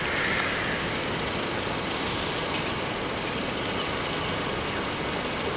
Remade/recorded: recorded